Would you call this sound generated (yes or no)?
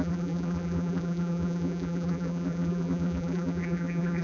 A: yes